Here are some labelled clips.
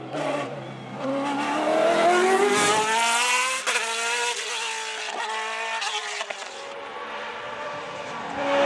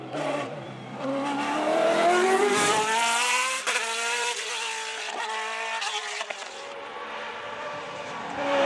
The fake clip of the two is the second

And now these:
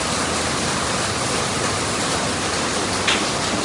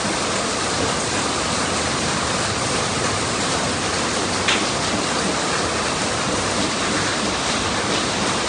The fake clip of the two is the second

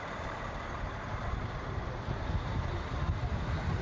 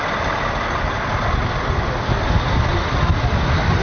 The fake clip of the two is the first